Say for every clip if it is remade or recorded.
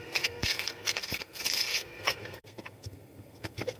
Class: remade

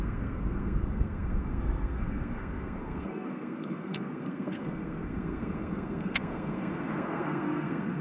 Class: remade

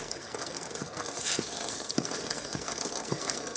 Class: remade